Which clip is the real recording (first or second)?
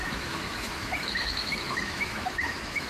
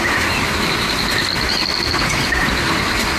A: second